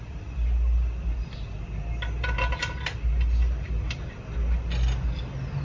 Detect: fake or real real